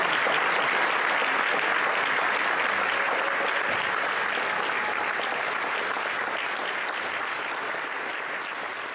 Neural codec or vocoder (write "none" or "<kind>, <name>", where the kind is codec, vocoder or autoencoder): none